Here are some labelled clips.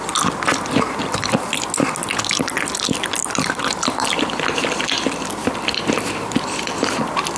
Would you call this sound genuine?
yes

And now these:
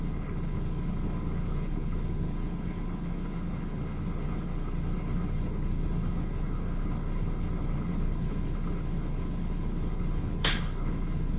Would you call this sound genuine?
no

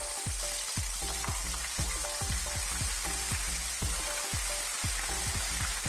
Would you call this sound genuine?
yes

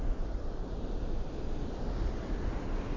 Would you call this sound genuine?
yes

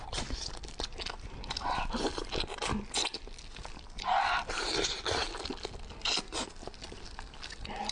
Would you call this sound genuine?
yes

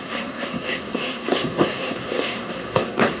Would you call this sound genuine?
no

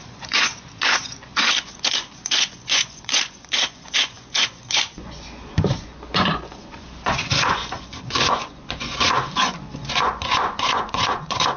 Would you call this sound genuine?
no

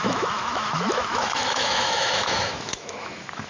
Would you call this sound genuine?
no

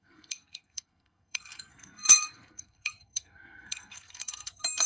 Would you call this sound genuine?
no